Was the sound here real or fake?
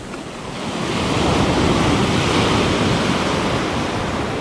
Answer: real